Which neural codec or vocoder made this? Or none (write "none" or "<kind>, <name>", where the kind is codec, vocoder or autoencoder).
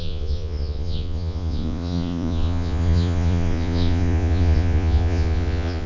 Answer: vocoder, Vocos